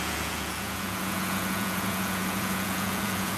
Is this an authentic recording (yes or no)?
no